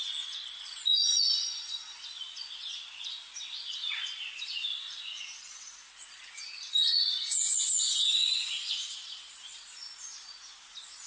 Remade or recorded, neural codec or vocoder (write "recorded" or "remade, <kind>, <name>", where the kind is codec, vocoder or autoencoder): remade, vocoder, Vocos